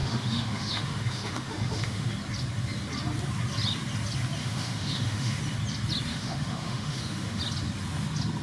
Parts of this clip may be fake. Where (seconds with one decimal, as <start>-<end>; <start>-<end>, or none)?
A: 0.0-2.1; 4.4-5.4; 6.1-7.4